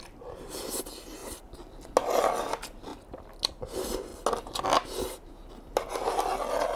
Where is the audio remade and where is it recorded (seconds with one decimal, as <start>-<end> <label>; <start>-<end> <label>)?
0.0-6.8 recorded